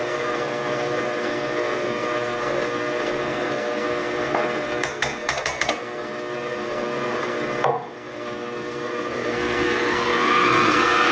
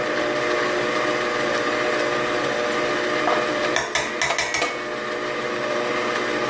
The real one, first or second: second